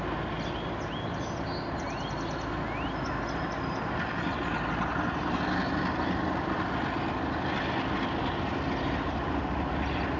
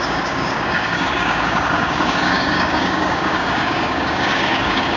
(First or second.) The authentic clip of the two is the first